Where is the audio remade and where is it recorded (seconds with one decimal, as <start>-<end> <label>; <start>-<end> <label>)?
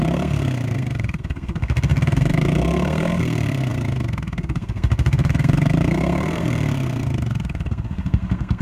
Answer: 0.0-8.6 remade